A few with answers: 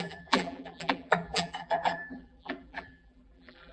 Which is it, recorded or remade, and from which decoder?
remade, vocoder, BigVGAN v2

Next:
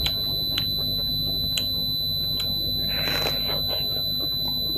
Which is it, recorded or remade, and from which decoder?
recorded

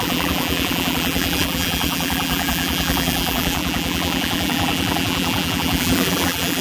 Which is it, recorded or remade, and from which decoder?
remade, vocoder, BigVGAN v2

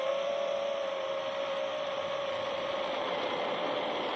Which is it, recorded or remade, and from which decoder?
remade, vocoder, BigVGAN v2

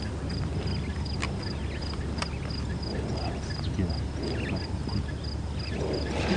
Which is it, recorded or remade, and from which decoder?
recorded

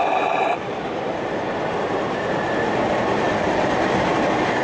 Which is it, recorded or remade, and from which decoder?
remade, vocoder, BigVGAN v2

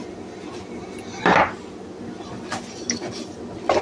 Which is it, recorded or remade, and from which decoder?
recorded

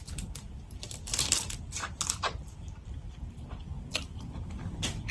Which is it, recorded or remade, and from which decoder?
remade, vocoder, BigVGAN v2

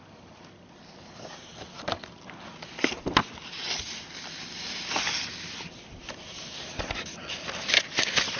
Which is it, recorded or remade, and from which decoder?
remade, vocoder, BigVGAN v2